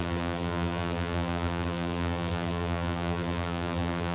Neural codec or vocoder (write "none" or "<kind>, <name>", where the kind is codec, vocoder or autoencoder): vocoder, BigVGAN v2